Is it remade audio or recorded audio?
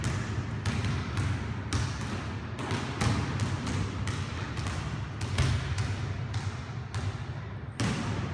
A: recorded